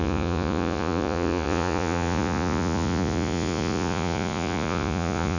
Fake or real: fake